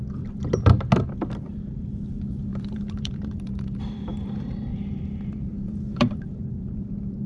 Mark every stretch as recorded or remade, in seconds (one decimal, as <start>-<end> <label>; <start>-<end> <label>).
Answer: 0.0-2.5 recorded; 2.5-7.3 remade

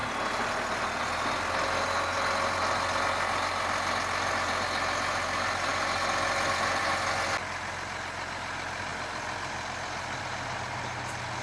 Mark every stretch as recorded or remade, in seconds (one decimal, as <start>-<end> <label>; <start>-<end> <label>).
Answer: 0.0-11.4 recorded

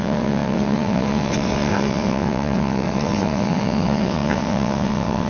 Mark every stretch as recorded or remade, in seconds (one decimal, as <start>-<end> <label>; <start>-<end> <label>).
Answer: 0.0-5.3 remade

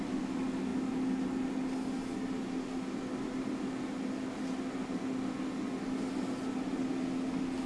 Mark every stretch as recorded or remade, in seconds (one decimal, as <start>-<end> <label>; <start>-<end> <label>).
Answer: 0.0-7.7 recorded

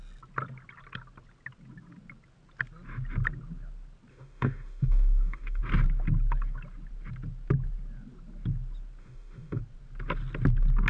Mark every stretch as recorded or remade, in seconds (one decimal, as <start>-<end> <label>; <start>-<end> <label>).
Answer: 0.0-4.1 recorded; 4.1-5.6 remade; 5.6-9.0 recorded; 9.0-9.6 remade; 9.6-10.9 recorded

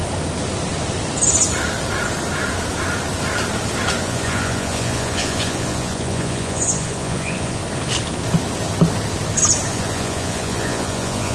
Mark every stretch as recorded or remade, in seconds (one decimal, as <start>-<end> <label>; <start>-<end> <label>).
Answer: 0.0-4.0 recorded; 4.0-7.6 remade; 7.6-9.7 recorded; 9.7-11.3 remade

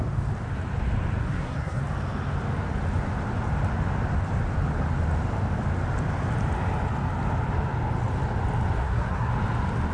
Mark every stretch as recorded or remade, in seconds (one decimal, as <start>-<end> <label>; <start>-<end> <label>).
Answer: 0.0-1.2 recorded; 1.2-1.8 remade; 1.8-8.8 recorded; 8.8-9.3 remade; 9.3-9.9 recorded

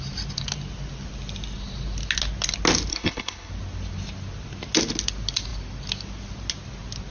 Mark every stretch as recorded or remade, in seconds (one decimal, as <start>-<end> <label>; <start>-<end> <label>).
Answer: 0.0-2.9 recorded; 2.9-3.5 remade; 3.5-7.1 recorded